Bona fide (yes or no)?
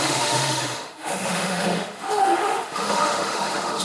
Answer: no